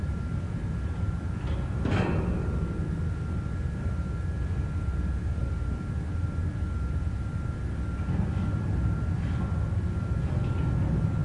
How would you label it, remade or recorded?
recorded